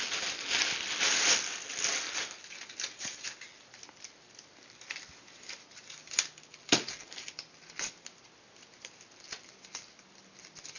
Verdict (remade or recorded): recorded